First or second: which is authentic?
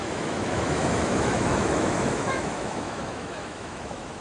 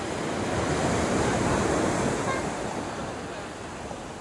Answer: second